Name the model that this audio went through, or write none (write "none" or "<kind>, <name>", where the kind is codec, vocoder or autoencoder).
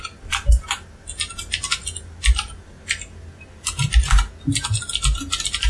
none